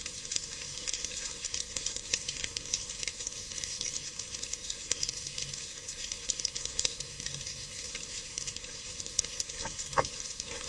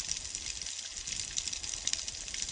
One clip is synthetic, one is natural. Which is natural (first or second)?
second